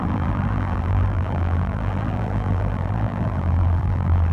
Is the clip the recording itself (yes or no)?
no